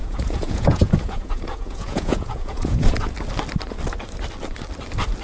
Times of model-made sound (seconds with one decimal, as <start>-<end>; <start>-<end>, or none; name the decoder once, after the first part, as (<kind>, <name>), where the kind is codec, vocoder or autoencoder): 0.0-3.1 (vocoder, Vocos)